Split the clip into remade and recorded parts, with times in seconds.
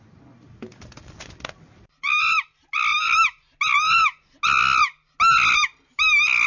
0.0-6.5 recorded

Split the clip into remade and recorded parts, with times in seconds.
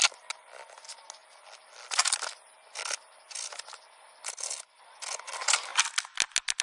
0.0-6.6 recorded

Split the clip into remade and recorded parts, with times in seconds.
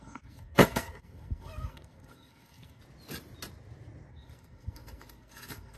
0.0-2.8 remade; 2.8-4.1 recorded; 4.1-5.8 remade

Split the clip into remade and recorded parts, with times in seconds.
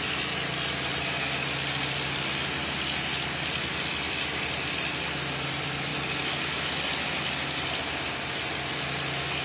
0.0-9.4 recorded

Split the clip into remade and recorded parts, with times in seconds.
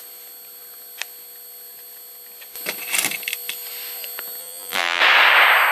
0.0-4.4 recorded; 4.4-5.0 remade; 5.0-5.7 recorded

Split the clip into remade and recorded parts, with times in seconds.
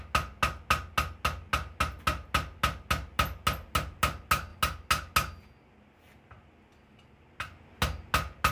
0.0-8.5 recorded